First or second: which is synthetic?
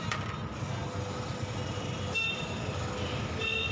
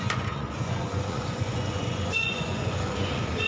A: second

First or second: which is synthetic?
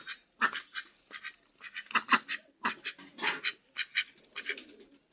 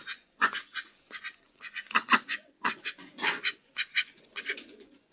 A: second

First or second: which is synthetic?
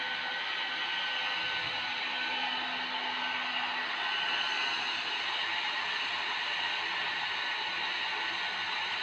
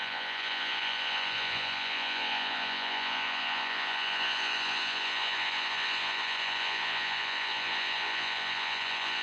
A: second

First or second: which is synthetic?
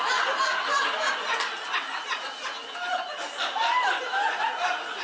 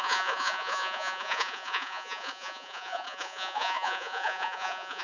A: second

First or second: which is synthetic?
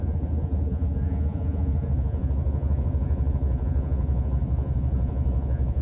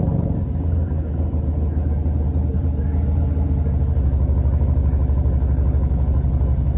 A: first